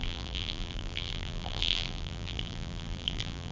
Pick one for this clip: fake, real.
fake